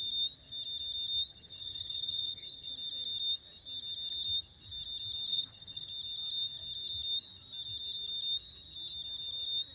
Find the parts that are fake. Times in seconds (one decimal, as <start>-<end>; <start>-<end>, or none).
1.3-2.7; 5.3-5.9